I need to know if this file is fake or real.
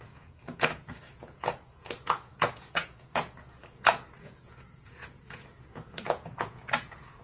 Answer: fake